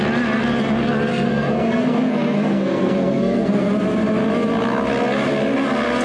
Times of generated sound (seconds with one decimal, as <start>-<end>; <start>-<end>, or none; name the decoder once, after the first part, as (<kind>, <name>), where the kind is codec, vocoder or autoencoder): 1.1-3.7 (codec, SNAC)

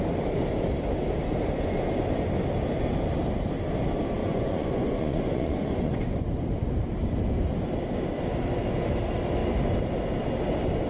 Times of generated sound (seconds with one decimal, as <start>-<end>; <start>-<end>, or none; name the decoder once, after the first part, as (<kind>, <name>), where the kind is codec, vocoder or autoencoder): 4.2-6.0 (vocoder, Vocos)

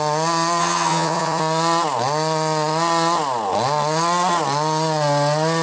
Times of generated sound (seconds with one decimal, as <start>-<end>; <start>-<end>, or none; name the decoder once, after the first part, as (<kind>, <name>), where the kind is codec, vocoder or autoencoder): 0.6-1.4 (vocoder, HiFi-GAN)

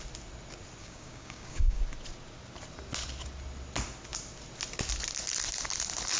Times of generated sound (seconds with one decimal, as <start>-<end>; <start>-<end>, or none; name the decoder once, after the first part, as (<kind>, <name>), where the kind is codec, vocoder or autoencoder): 0.8-1.8 (codec, DAC)

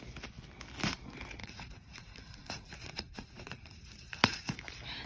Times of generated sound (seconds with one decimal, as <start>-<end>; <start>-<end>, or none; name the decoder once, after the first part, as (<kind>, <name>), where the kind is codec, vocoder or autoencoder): 1.4-4.5 (vocoder, Vocos)